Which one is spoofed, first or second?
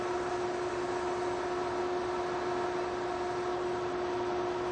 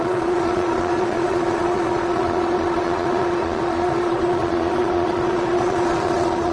second